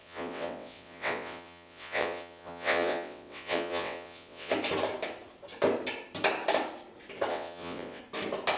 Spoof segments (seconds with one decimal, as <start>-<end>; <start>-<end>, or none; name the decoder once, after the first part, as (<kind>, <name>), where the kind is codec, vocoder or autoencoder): 0.0-4.5 (vocoder, WaveNeXt); 7.3-8.0